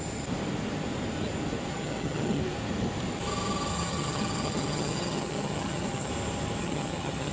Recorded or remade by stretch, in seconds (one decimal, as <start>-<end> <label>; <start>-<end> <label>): 0.0-1.7 recorded; 1.7-2.4 remade; 2.4-3.7 recorded; 3.7-6.1 remade; 6.1-6.6 recorded; 6.6-7.3 remade